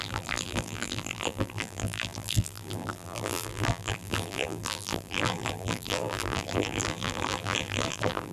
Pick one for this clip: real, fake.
fake